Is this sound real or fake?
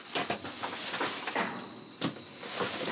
real